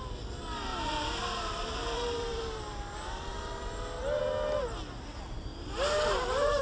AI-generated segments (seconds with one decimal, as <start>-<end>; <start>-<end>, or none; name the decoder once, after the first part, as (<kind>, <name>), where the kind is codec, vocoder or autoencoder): 0.7-2.4 (vocoder, BigVGAN v2); 3.3-4.2; 5.5-6.6